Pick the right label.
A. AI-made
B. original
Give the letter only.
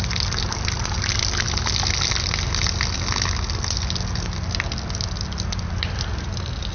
B